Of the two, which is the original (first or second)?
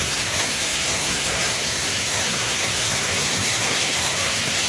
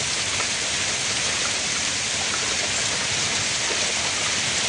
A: second